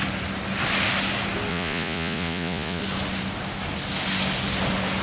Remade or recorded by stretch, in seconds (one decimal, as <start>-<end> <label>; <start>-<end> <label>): 0.0-1.5 recorded; 1.5-2.8 remade; 2.8-5.0 recorded